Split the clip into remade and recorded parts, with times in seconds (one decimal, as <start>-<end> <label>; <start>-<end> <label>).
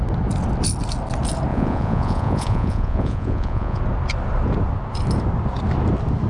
0.0-1.5 recorded; 1.5-3.8 remade; 3.8-6.3 recorded